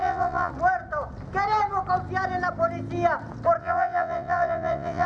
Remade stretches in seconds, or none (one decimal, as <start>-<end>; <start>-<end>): 0.0-0.5; 3.6-5.1